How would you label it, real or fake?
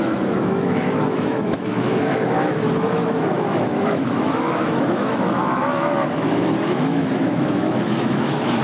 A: fake